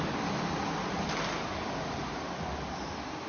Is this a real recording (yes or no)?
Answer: yes